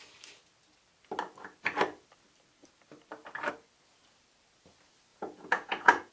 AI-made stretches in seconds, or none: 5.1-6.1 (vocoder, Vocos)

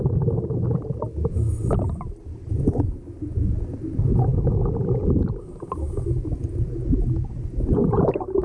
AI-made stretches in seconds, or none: none

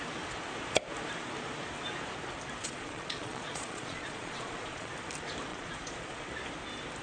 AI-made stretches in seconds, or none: 2.6-4.9 (vocoder, Vocos); 5.5-6.3

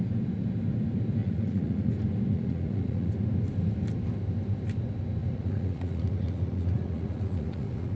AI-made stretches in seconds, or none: 1.2-1.9 (vocoder, Vocos); 2.3-3.1; 5.2-8.0

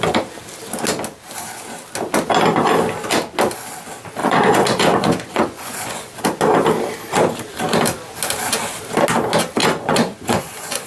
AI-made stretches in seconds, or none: 4.2-6.1 (vocoder, Vocos); 9.6-10.9

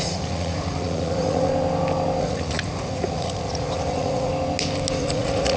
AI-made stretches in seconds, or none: 0.0-1.5 (vocoder, Vocos); 2.2-4.3; 5.0-5.6

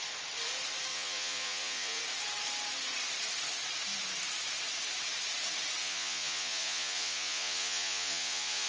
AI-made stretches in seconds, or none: 0.9-2.0 (vocoder, Vocos); 5.8-8.7